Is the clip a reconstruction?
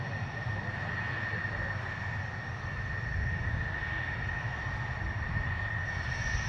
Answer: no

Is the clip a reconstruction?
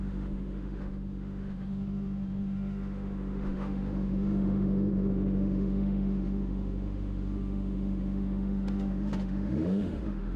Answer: yes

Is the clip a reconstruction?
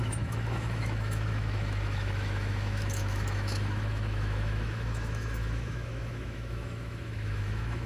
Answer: yes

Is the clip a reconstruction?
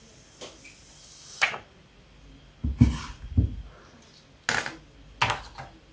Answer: no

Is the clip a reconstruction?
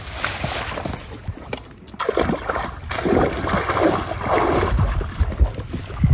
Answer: no